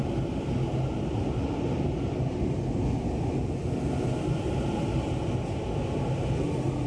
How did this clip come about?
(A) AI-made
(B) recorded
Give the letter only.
B